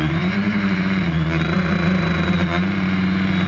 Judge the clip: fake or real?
fake